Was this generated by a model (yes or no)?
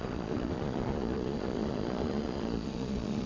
yes